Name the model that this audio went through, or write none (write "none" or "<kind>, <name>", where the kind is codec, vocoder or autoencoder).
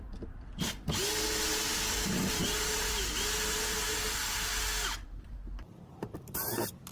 none